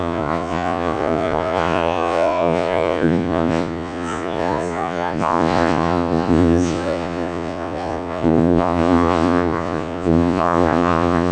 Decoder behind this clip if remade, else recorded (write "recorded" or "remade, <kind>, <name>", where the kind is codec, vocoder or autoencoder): remade, vocoder, Vocos